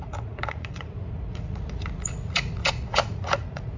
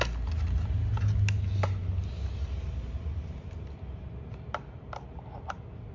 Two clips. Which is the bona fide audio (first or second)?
second